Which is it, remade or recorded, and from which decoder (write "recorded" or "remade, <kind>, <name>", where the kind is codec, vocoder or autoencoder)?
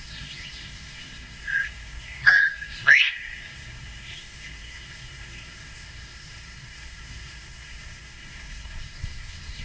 remade, codec, SNAC